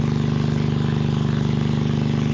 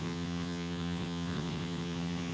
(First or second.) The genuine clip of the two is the first